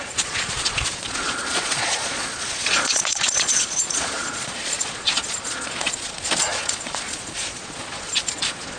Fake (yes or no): yes